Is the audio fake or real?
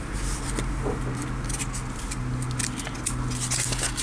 real